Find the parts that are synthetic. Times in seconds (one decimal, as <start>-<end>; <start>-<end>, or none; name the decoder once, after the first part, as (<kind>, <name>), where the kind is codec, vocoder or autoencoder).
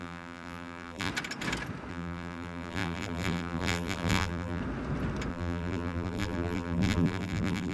0.0-1.1 (vocoder, BigVGAN v2); 1.9-4.6; 5.3-7.7